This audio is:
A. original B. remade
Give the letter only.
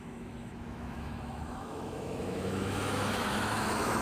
B